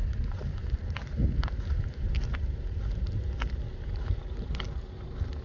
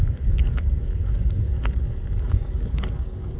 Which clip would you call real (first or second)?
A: first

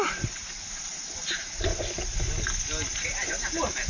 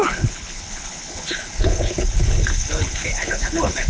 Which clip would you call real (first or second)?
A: first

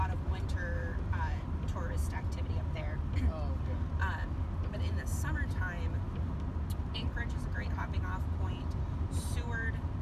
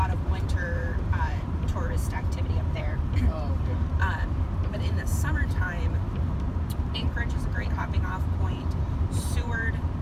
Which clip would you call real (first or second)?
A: first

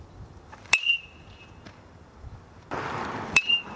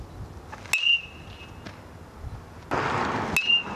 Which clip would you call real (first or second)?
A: second